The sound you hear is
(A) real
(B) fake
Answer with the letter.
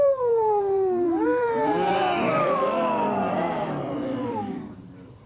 B